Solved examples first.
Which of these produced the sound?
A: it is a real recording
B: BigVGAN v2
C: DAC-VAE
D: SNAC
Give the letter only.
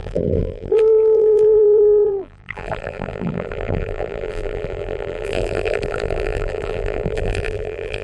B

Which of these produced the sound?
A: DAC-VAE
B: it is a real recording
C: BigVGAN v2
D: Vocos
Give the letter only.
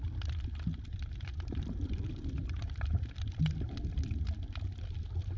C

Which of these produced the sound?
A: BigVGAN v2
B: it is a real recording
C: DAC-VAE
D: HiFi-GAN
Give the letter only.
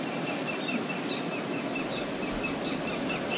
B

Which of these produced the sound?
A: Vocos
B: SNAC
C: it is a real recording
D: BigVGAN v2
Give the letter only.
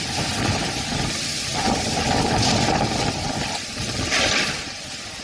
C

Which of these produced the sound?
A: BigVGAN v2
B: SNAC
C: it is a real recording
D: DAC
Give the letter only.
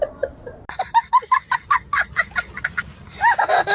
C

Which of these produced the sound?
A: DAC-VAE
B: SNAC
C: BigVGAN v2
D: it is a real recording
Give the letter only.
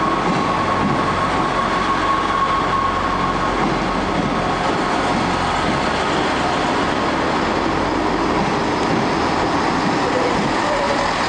D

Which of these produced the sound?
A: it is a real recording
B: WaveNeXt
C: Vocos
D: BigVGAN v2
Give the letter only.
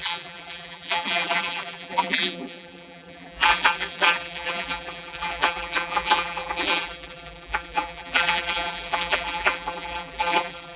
D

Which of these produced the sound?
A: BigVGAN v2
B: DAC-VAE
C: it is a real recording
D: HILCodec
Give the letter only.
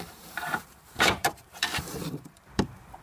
A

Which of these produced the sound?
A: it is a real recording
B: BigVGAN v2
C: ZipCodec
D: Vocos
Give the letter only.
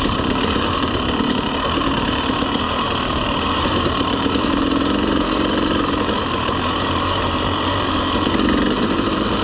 B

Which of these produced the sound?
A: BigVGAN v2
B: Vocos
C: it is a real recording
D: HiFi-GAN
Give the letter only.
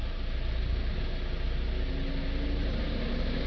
C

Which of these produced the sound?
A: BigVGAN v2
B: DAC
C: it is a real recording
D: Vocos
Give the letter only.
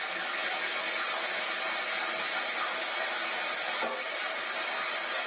C